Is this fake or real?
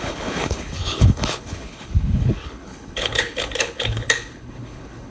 fake